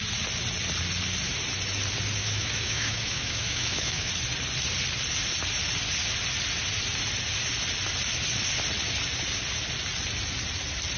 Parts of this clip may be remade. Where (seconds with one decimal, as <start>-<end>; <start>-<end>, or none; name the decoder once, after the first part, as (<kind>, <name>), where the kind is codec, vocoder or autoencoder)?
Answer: 2.2-4.1 (autoencoder, DAC-VAE)